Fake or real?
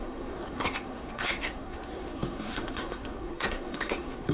fake